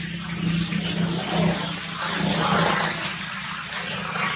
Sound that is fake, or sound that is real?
real